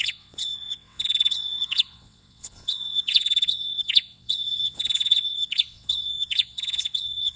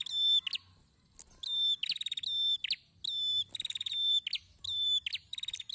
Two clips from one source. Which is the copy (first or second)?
first